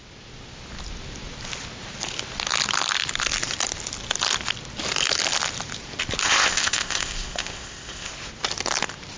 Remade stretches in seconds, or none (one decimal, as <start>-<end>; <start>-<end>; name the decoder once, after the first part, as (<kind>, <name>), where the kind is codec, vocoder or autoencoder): 6.2-8.1 (codec, ZipCodec)